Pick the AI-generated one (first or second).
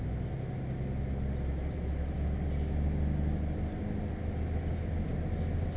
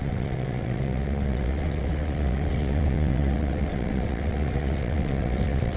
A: second